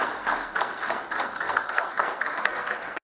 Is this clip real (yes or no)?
no